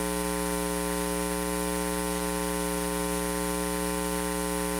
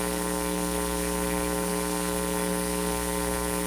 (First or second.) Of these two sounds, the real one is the first